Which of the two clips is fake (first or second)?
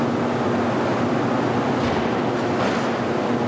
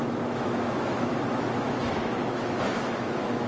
second